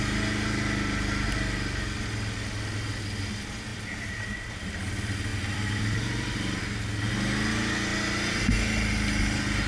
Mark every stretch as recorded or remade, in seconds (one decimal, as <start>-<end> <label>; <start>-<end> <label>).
0.0-3.7 recorded; 3.7-4.5 remade; 4.5-5.3 recorded; 5.3-6.6 remade; 6.6-9.7 recorded